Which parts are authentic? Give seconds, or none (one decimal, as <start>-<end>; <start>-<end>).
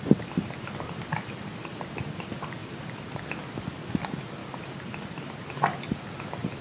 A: 0.0-2.6; 3.2-4.4; 5.6-6.6